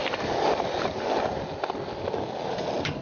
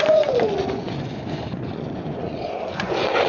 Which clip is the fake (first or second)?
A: second